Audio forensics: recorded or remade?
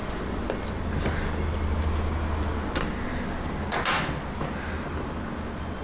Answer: recorded